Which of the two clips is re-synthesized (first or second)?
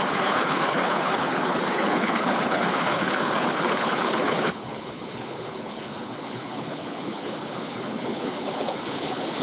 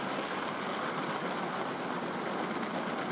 first